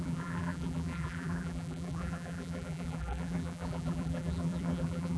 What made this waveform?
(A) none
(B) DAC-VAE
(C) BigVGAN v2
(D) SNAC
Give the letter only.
C